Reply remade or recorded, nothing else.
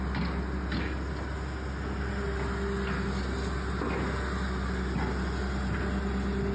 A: recorded